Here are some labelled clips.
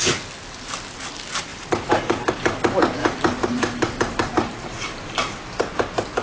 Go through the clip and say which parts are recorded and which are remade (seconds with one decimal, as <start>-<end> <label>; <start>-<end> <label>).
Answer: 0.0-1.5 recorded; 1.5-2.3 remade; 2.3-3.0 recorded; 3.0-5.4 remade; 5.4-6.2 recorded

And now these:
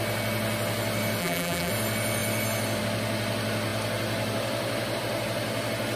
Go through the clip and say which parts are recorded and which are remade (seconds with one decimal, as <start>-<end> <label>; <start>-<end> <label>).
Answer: 0.0-1.2 recorded; 1.2-1.7 remade; 1.7-6.0 recorded

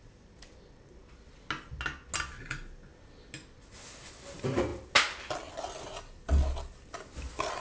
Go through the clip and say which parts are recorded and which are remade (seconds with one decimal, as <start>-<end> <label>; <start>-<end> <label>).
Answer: 0.0-7.6 recorded

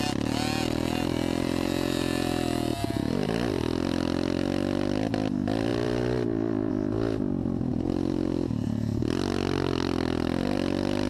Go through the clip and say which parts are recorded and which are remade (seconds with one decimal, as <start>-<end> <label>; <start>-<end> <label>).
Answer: 0.0-2.7 recorded; 2.7-3.6 remade; 3.6-5.7 recorded; 5.7-6.7 remade; 6.7-11.1 recorded